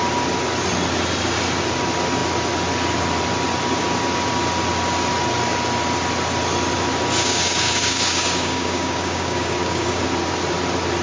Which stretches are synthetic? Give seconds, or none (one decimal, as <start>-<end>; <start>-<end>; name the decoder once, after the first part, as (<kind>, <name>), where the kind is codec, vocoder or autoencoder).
7.2-10.0 (codec, DAC)